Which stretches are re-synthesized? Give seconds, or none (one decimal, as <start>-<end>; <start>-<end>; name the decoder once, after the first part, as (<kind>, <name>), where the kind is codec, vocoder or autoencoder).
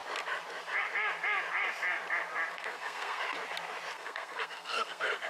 2.5-3.2 (codec, SNAC); 3.9-5.3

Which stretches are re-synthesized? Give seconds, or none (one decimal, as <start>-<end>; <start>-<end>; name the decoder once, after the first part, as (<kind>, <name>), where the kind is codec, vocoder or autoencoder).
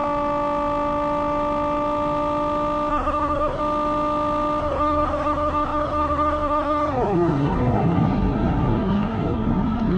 2.9-3.6 (codec, SNAC); 4.6-10.0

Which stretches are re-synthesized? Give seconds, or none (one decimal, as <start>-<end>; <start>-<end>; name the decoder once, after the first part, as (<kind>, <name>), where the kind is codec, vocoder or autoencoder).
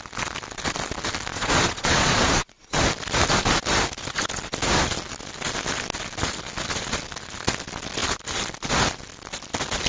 1.3-2.8 (vocoder, Vocos)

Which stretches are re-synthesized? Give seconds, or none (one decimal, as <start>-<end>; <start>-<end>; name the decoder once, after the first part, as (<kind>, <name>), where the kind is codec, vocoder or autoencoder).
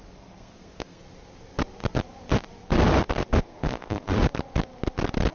0.0-1.0 (codec, SNAC); 3.4-4.2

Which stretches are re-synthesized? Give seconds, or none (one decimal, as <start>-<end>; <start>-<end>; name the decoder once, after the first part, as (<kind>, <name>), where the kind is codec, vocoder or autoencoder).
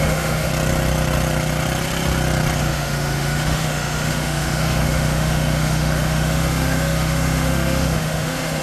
0.0-0.5 (autoencoder, DAC-VAE); 2.6-8.6